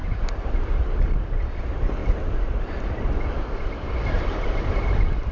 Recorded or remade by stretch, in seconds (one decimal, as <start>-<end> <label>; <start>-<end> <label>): 0.0-1.6 remade; 1.6-5.3 recorded